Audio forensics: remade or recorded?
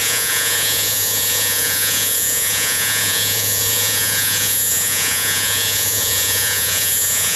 remade